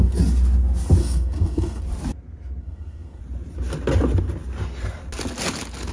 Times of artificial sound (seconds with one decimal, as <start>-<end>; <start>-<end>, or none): 1.0-1.8; 2.6-3.2